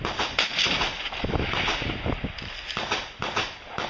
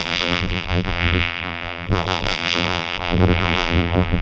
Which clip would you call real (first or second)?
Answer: first